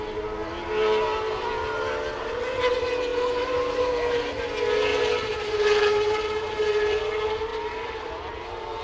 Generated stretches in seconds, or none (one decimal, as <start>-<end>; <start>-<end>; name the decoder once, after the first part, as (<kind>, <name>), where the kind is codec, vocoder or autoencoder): 3.1-4.3 (vocoder, BigVGAN v2); 4.9-7.0; 7.5-8.1